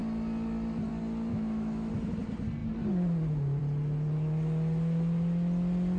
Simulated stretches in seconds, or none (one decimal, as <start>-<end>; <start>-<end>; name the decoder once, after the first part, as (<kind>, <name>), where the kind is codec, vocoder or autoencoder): 1.3-1.9 (autoencoder, DAC-VAE)